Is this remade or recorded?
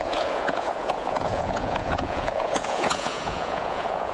remade